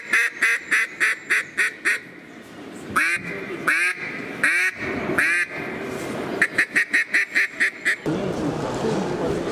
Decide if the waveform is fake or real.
real